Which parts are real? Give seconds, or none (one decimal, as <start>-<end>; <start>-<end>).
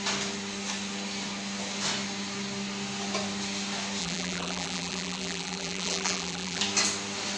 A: 0.0-4.0; 6.6-7.4